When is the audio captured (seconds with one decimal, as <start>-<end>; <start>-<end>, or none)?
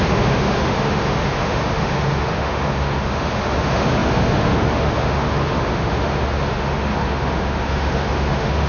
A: none